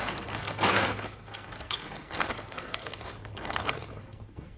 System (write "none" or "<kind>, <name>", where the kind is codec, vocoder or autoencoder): codec, SNAC